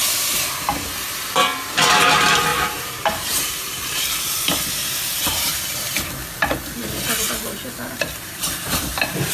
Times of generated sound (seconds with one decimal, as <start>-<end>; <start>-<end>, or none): 2.5-6.0; 7.8-8.9